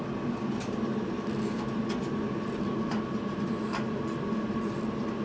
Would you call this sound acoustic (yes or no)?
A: yes